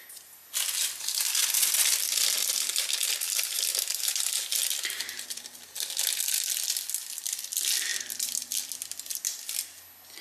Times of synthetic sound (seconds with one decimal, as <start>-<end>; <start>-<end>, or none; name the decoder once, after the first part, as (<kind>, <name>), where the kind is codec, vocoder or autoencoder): none